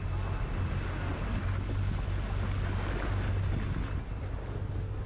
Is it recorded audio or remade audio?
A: recorded